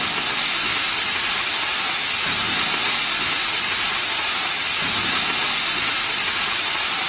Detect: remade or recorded recorded